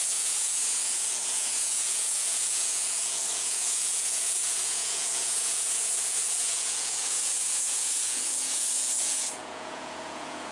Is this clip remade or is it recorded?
remade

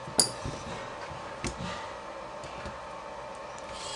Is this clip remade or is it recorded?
recorded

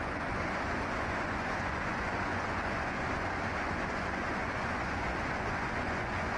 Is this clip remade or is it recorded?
remade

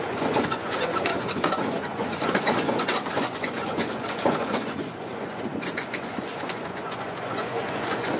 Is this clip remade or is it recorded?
remade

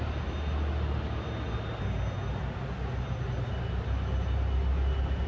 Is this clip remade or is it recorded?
recorded